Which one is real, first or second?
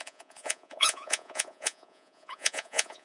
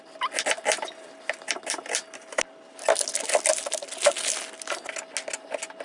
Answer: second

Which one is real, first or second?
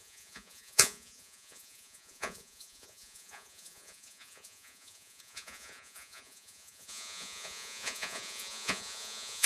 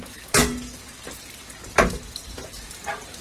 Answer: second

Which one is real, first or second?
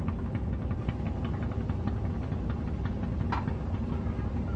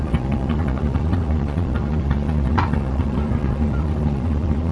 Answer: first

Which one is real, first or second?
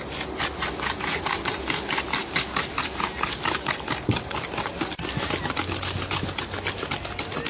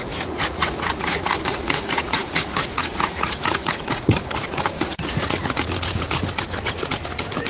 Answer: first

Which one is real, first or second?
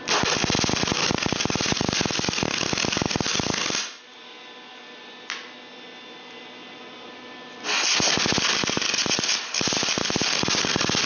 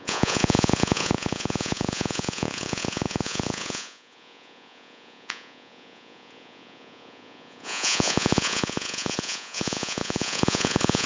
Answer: first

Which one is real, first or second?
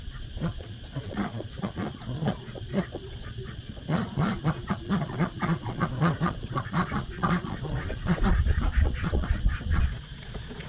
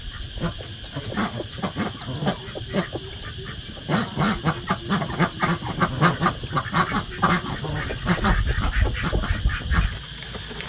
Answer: second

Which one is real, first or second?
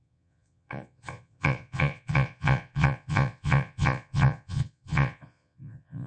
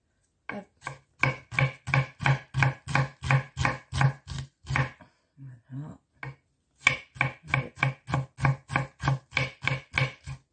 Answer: second